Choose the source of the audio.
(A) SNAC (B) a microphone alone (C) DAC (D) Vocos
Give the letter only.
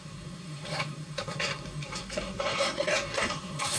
A